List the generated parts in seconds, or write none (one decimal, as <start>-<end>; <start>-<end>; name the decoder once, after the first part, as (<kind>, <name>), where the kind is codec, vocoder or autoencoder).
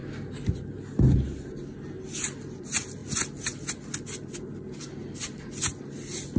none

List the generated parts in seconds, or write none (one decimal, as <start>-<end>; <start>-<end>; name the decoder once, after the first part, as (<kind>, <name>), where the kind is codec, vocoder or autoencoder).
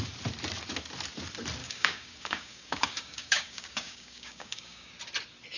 1.6-4.9 (codec, DAC)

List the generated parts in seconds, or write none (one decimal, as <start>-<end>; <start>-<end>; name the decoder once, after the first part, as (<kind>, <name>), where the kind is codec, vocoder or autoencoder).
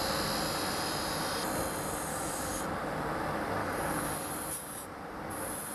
2.1-2.6 (codec, DAC); 3.6-4.3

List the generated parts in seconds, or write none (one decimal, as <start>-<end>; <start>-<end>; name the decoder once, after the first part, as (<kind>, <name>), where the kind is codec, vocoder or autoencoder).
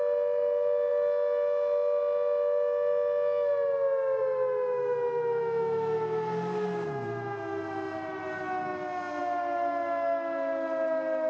none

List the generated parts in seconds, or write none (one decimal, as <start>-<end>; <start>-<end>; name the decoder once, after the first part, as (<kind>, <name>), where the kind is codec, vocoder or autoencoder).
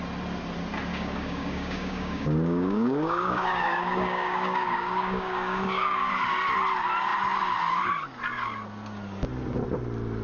0.9-6.1 (codec, DAC)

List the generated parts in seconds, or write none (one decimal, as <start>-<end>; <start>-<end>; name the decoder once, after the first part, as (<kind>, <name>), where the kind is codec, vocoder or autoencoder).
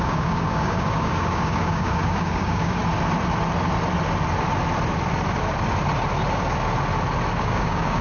0.0-2.8 (codec, DAC); 7.4-8.0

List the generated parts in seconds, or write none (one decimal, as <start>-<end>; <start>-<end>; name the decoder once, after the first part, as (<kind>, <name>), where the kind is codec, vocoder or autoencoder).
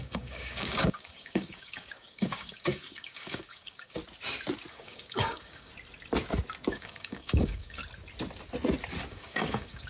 0.0-4.0 (codec, DAC); 4.7-5.7; 6.7-7.8; 9.1-9.9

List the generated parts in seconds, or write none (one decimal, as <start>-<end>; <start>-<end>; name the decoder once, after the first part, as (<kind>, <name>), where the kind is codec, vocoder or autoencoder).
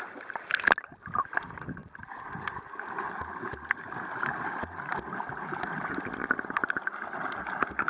none